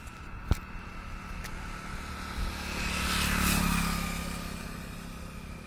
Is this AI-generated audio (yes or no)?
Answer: no